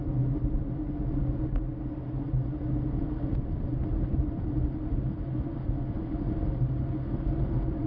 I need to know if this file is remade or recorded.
recorded